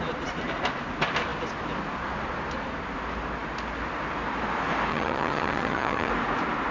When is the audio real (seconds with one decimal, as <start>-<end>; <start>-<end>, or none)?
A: 0.0-4.9; 6.1-6.7